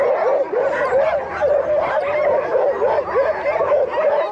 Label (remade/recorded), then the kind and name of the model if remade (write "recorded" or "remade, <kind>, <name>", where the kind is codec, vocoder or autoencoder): recorded